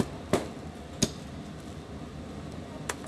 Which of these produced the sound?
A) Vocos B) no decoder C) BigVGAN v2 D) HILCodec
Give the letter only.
B